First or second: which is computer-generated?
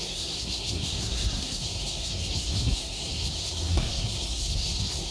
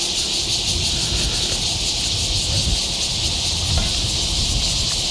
first